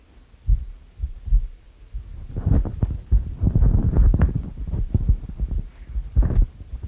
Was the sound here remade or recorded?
recorded